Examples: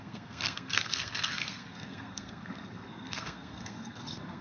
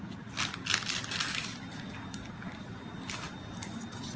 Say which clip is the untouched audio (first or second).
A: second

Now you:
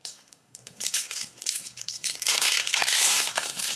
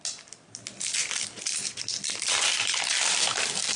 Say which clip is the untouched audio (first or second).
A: second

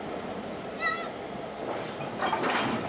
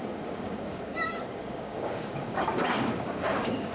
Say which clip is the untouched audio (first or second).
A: first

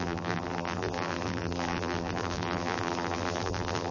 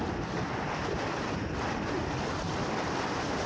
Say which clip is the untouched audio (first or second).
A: second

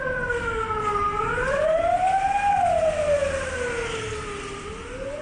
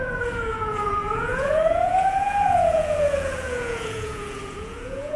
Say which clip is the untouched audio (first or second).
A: first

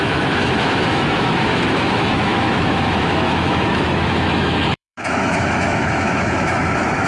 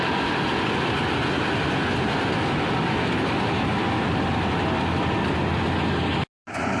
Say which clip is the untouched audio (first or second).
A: second